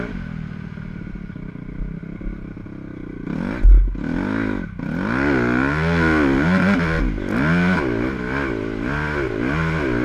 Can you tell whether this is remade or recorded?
recorded